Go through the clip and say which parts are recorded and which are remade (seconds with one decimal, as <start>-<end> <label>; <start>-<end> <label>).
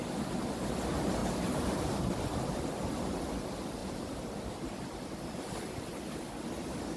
0.0-1.2 recorded; 1.2-2.0 remade; 2.0-3.8 recorded; 3.8-4.5 remade; 4.5-7.0 recorded